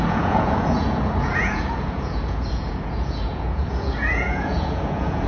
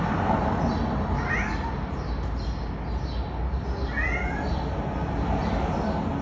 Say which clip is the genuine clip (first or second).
second